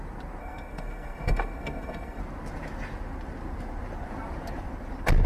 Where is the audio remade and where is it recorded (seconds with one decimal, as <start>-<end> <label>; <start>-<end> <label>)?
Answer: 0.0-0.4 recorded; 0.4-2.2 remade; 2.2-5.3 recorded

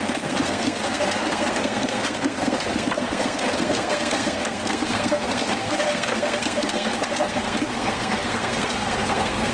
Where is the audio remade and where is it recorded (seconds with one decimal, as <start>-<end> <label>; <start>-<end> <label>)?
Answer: 0.0-9.5 remade

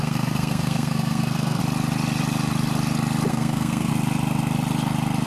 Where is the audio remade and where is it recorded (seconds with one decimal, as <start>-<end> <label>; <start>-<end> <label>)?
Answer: 0.0-1.6 remade; 1.6-3.3 recorded; 3.3-3.9 remade; 3.9-5.3 recorded